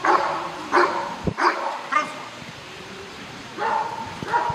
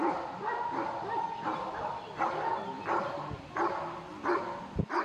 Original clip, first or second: second